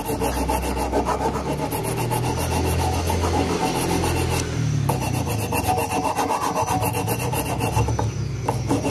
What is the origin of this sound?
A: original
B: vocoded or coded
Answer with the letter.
A